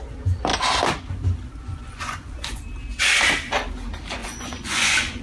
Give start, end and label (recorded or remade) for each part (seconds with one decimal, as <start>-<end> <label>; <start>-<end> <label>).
0.0-1.6 recorded; 1.6-2.6 remade; 2.6-4.2 recorded; 4.2-5.2 remade